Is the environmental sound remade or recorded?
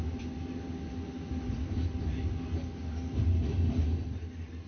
recorded